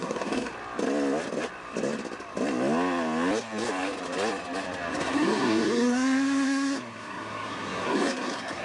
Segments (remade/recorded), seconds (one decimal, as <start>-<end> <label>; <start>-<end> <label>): 0.0-0.5 remade; 0.5-4.9 recorded; 4.9-8.6 remade